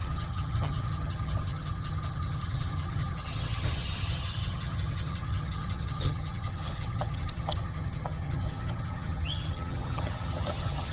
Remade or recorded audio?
remade